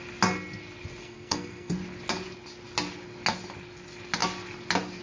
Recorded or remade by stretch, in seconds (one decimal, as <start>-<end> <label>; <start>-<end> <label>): 0.0-1.0 recorded; 1.0-1.7 remade; 1.7-5.0 recorded

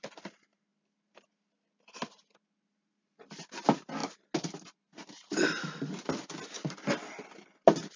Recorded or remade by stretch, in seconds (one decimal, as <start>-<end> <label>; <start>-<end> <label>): 0.0-8.0 recorded

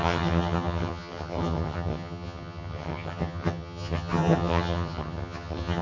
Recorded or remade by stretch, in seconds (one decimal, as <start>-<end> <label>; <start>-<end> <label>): 0.0-5.8 remade